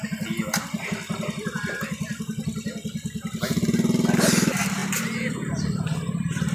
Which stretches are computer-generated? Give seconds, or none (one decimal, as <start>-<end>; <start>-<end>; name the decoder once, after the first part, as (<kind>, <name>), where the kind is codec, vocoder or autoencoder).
none